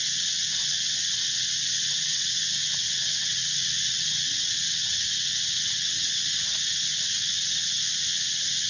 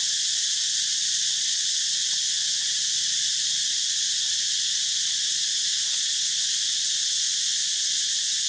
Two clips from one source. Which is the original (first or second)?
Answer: second